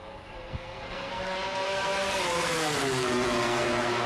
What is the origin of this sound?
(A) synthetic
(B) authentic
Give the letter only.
A